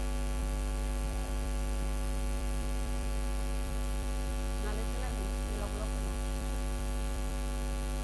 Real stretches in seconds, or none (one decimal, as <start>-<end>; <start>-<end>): 0.0-0.4; 4.3-5.1; 7.3-8.0